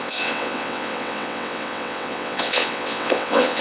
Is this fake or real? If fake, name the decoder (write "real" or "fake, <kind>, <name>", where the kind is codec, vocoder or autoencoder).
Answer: fake, vocoder, WaveNeXt